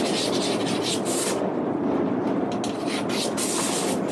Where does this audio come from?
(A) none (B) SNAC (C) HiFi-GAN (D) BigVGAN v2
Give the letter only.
A